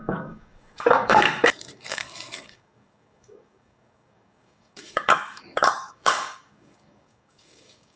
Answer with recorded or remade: remade